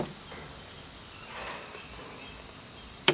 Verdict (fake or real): real